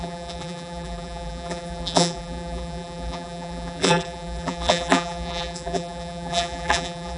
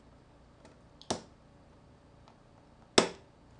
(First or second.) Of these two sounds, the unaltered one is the second